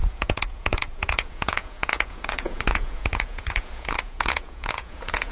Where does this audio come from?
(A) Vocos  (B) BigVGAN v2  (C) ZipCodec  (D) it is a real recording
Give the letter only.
A